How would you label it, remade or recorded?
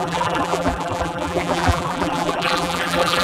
remade